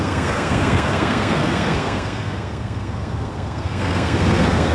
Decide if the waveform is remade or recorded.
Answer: remade